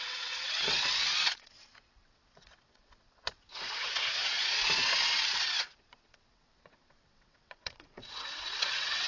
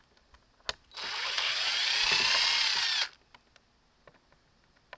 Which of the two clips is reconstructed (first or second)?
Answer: first